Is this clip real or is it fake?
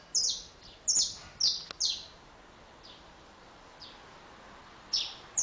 real